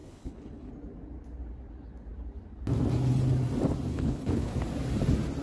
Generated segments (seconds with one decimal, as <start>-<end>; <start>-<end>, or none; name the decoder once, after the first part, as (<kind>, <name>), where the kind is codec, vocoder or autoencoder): 0.0-0.7 (codec, HILCodec); 3.9-4.5